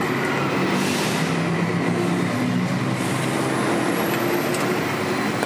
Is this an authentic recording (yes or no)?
yes